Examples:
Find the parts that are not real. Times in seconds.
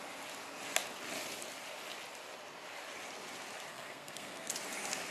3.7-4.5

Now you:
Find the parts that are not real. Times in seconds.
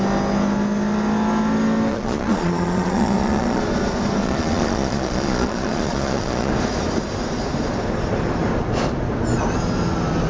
1.9-3.6; 4.2-6.5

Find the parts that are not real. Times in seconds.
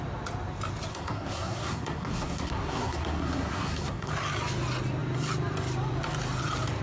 0.9-4.1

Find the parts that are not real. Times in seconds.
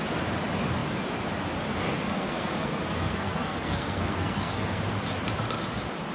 2.0-4.8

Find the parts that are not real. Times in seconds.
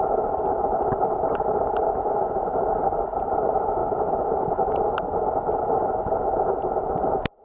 none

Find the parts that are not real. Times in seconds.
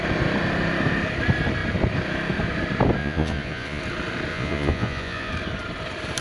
3.0-3.8; 4.3-5.3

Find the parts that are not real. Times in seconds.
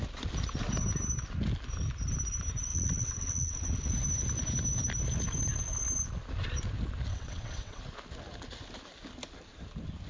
2.7-3.9; 7.1-7.8